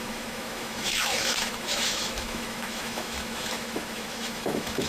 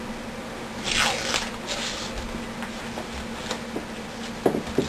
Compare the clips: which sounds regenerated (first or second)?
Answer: first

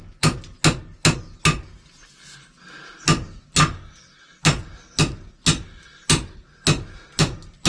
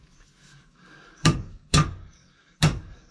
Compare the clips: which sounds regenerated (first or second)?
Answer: second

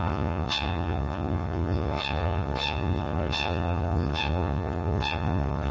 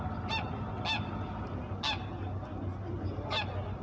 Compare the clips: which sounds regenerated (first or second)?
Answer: first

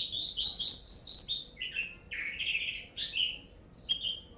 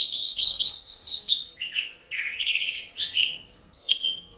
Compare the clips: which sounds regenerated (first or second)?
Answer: second